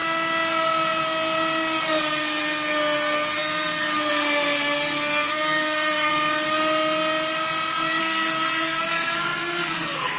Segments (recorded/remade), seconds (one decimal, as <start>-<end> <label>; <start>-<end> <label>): 0.0-2.0 recorded; 2.0-6.1 remade; 6.1-8.0 recorded; 8.0-10.2 remade